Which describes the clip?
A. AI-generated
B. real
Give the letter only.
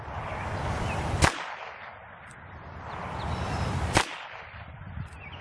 B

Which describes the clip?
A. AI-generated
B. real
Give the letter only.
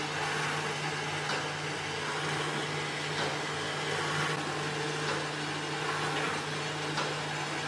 B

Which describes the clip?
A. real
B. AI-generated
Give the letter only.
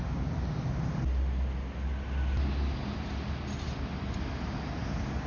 A